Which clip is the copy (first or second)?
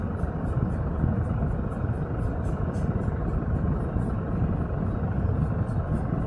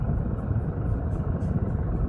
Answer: second